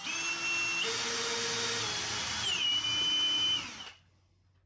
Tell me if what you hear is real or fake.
real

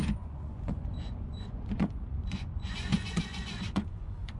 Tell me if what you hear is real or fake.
fake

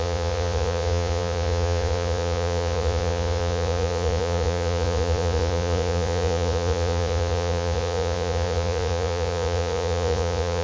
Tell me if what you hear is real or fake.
fake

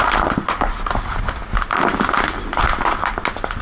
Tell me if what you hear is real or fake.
real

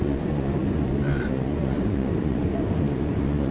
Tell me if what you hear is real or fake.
fake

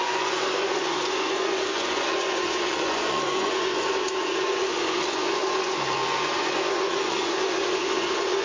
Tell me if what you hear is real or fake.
fake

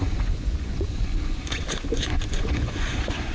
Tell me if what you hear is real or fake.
fake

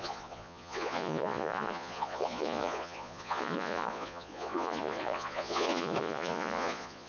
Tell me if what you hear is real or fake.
fake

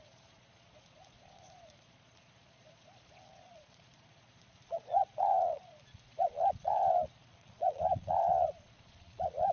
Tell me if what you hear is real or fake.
fake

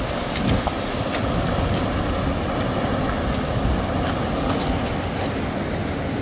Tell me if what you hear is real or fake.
real